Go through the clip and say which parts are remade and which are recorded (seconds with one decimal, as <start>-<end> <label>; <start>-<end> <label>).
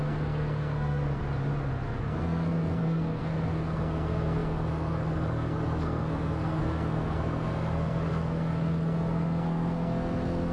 0.0-1.2 remade; 1.2-2.0 recorded; 2.0-10.5 remade